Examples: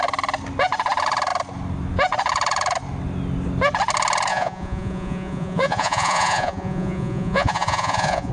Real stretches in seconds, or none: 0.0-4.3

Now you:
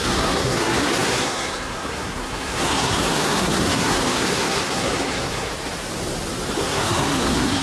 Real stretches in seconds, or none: 5.5-6.6

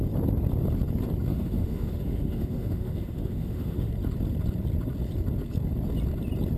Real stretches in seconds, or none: 0.0-1.3; 3.9-6.6